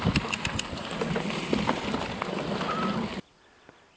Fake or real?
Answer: real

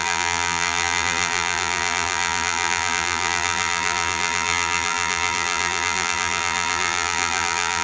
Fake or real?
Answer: fake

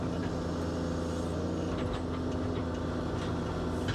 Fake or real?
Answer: real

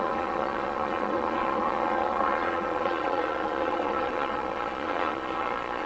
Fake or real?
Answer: fake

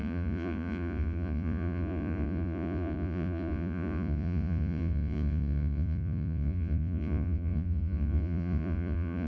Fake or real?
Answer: fake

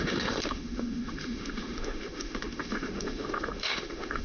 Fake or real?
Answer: fake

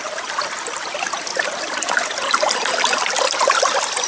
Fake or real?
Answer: real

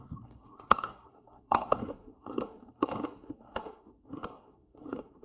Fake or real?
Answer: fake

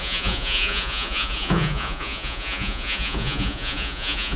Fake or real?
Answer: fake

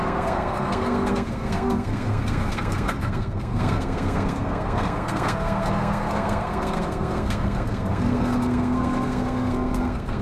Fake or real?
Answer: fake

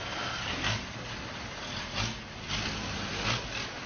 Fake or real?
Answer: real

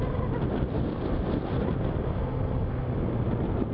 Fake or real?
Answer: real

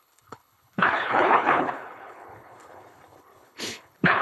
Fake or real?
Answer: fake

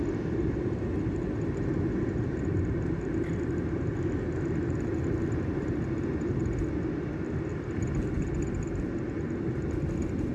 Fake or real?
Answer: real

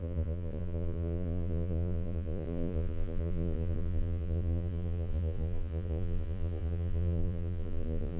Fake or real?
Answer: fake